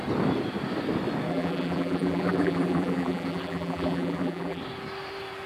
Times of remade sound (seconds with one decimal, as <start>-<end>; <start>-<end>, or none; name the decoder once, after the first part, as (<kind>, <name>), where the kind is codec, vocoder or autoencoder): 1.3-4.6 (vocoder, BigVGAN v2)